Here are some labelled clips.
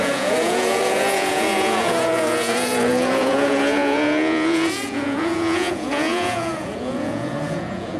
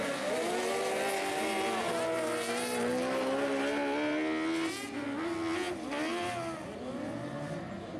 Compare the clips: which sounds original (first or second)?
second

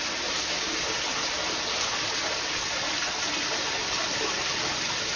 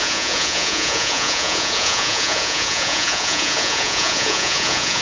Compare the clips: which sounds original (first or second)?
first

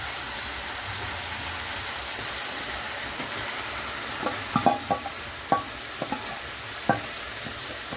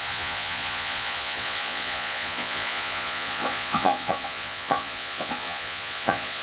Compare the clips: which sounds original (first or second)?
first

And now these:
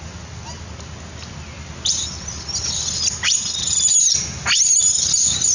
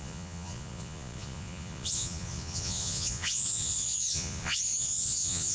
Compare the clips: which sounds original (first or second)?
first